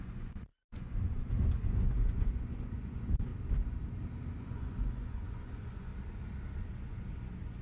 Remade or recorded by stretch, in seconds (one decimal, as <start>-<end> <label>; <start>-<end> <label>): 0.0-3.3 remade; 3.3-4.4 recorded; 4.4-5.9 remade; 5.9-6.7 recorded; 6.7-7.6 remade